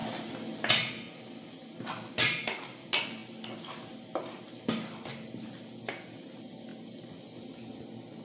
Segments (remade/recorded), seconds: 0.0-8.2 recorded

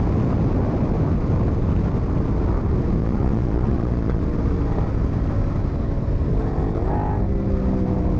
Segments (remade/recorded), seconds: 0.0-3.0 recorded; 3.0-4.2 remade; 4.2-8.2 recorded

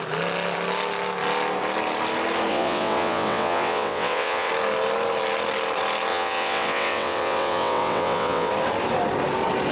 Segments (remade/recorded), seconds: 0.0-2.5 recorded; 2.5-4.5 remade; 4.5-6.1 recorded; 6.1-8.5 remade; 8.5-9.7 recorded

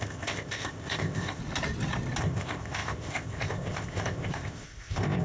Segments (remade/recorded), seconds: 0.0-1.4 remade; 1.4-2.2 recorded; 2.2-5.2 remade